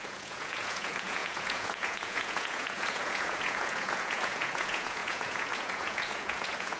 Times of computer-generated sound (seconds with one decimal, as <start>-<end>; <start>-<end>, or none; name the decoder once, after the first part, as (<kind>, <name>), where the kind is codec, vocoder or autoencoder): 0.0-6.8 (vocoder, Vocos)